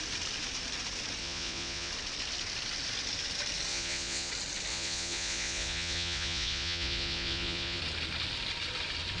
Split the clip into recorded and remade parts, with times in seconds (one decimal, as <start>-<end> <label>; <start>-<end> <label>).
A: 0.0-1.2 recorded; 1.2-1.9 remade; 1.9-3.7 recorded; 3.7-4.3 remade; 4.3-4.7 recorded; 4.7-7.8 remade; 7.8-9.2 recorded